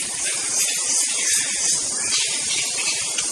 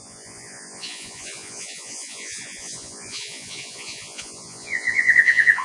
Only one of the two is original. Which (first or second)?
first